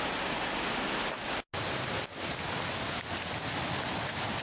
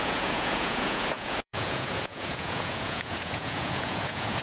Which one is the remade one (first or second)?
second